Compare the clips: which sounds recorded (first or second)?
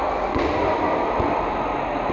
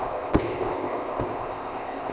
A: first